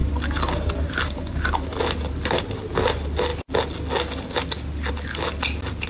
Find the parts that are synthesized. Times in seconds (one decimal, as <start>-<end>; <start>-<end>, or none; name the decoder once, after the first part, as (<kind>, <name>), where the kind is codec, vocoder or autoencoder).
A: none